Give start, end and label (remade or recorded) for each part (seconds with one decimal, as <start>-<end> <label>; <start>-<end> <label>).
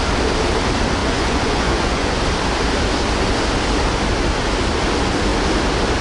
0.0-1.0 recorded; 1.0-2.2 remade; 2.2-6.0 recorded